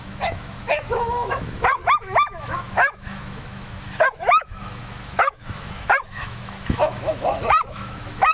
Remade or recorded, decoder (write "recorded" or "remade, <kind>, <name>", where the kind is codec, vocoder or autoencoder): remade, autoencoder, DAC-VAE